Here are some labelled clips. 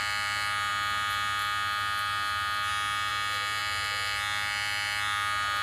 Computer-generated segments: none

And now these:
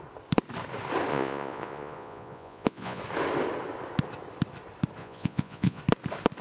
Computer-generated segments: 1.1-3.0 (vocoder, Vocos); 5.0-5.8

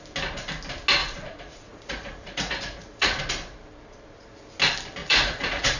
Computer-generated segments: 1.0-3.2 (vocoder, Vocos); 5.0-5.8

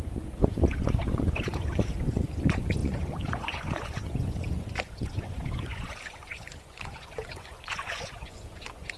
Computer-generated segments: 0.0-9.0 (vocoder, Vocos)

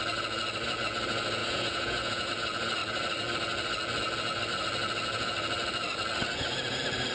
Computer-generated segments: 1.4-2.3 (vocoder, Vocos)

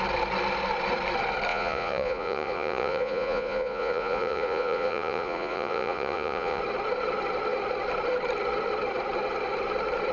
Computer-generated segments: 1.5-6.6 (vocoder, Vocos)